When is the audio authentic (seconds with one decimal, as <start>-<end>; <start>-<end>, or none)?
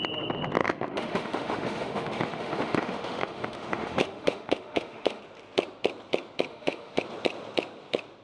0.0-0.6; 5.2-6.5; 7.0-8.2